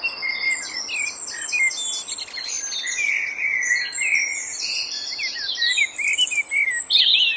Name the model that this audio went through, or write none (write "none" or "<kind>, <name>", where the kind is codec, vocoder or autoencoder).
none